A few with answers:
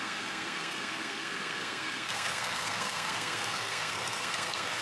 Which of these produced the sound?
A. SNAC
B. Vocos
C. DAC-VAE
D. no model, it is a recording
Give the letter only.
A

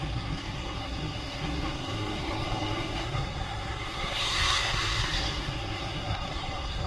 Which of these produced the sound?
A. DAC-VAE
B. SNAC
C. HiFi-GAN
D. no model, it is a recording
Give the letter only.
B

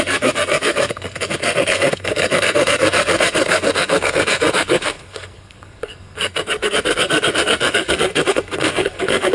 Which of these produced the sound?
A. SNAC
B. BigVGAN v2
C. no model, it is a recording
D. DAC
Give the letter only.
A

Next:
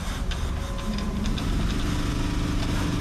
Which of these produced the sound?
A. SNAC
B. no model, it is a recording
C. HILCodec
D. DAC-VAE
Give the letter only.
B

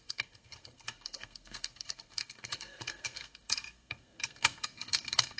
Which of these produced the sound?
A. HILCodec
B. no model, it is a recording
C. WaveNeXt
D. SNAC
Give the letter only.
D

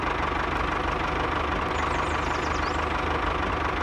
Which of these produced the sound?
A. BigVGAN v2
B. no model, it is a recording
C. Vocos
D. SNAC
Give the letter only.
B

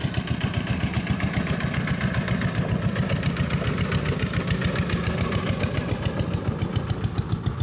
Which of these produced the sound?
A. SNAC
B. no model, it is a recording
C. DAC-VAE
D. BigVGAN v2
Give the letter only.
B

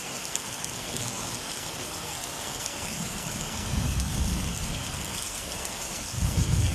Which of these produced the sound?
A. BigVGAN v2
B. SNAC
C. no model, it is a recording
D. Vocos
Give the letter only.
B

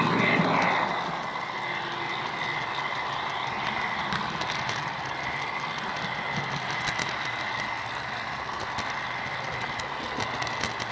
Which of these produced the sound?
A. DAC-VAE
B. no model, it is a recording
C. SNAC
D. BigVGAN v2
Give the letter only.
B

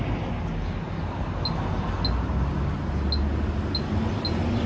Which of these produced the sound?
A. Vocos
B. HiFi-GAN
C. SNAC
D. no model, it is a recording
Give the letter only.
D